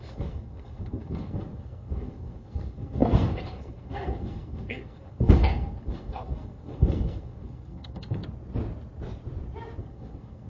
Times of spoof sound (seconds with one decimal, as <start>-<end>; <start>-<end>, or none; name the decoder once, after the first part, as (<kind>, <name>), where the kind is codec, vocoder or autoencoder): 0.0-8.2 (codec, SNAC); 9.8-10.5